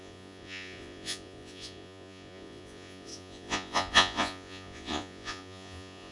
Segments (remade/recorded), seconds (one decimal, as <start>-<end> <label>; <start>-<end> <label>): 0.0-6.1 remade